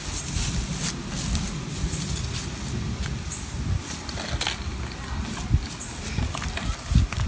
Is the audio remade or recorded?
recorded